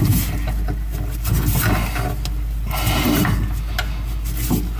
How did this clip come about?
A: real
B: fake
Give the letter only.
A